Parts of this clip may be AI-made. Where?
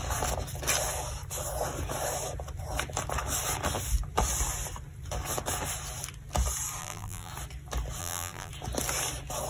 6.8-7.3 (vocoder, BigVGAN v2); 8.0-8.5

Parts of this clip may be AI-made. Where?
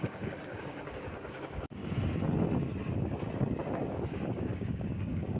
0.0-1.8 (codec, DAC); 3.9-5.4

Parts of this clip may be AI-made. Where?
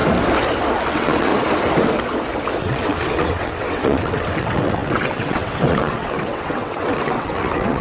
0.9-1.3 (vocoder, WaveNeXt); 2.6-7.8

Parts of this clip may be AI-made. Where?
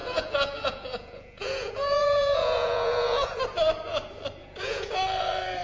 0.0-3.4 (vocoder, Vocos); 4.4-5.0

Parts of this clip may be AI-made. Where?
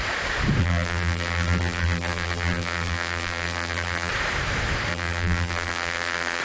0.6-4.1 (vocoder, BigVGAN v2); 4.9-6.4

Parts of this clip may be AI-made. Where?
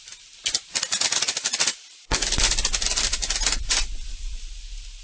3.0-5.0 (vocoder, BigVGAN v2)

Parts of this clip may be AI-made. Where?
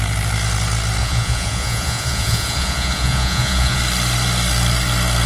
1.0-3.8 (vocoder, Vocos)